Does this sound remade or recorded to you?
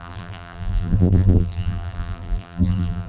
remade